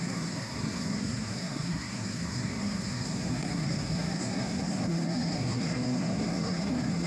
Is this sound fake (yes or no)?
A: yes